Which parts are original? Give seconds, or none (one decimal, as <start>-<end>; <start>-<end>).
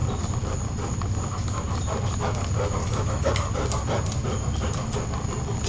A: 0.0-2.8; 3.3-5.7